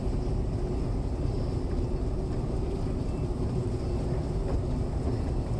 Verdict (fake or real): real